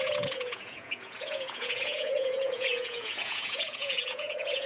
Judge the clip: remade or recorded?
remade